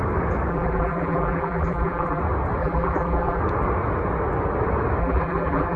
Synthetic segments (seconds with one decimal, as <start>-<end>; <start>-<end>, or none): 0.5-2.2; 2.6-3.4; 5.0-5.8